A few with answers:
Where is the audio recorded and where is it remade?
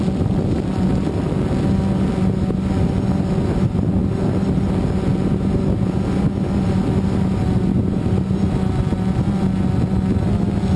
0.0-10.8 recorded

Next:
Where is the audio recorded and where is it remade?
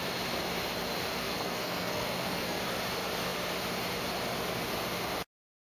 0.0-1.2 recorded; 1.2-2.6 remade; 2.6-5.7 recorded